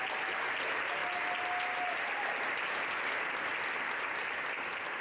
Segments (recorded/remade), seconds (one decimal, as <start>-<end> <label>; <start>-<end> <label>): 0.0-5.0 recorded